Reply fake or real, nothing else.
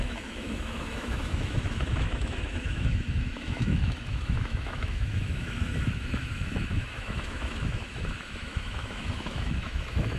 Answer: fake